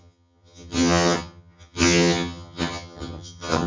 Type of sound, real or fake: fake